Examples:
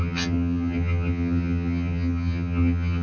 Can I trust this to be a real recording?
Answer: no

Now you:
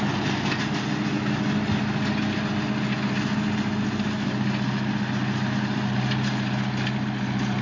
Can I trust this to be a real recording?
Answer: yes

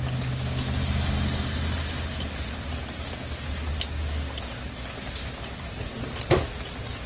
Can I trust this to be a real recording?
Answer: yes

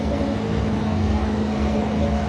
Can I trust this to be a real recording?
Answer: no